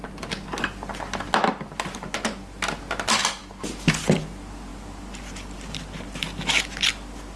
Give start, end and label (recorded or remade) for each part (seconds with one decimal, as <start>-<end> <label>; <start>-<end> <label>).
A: 0.0-7.4 recorded